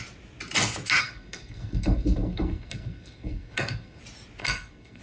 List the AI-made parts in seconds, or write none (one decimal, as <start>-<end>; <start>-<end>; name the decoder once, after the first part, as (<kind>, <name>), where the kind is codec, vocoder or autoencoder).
1.0-4.0 (codec, SNAC); 4.4-5.0